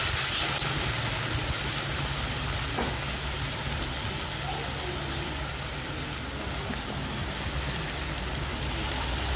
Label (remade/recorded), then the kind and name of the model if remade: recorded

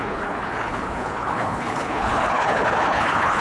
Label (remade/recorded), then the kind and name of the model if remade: remade, codec, HILCodec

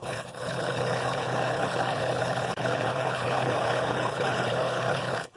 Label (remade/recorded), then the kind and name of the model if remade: remade, codec, HILCodec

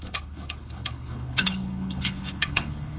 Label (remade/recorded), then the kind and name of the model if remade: remade, codec, HILCodec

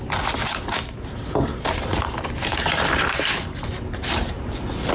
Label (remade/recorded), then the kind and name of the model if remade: recorded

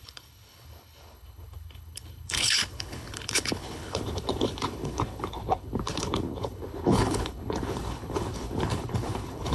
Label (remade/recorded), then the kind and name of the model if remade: remade, codec, HILCodec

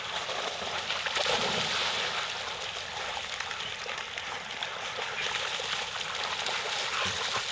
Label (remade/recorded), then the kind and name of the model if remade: recorded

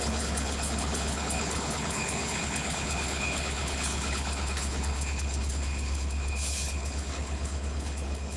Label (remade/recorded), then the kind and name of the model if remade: remade, codec, HILCodec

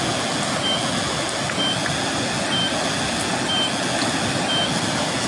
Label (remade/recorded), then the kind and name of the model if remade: recorded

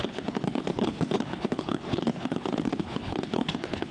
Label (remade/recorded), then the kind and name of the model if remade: remade, codec, HILCodec